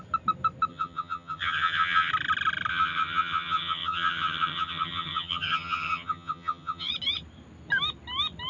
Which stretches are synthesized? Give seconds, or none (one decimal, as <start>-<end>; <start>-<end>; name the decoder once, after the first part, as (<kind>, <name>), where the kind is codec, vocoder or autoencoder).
0.7-2.1 (vocoder, HiFi-GAN); 2.7-6.9